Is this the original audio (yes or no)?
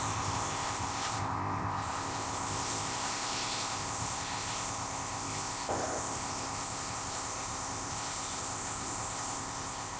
no